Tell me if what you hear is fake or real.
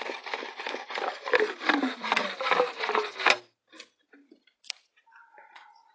fake